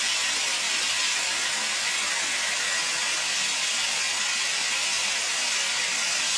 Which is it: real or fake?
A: real